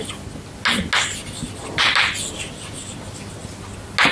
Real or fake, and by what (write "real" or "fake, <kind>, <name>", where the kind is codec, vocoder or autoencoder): real